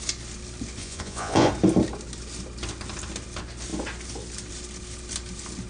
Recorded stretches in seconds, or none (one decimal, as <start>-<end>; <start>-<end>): 0.0-0.8; 1.5-5.7